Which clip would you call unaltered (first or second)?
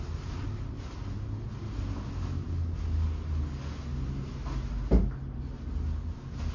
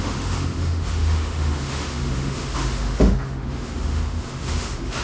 first